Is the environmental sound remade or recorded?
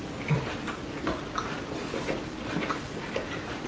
recorded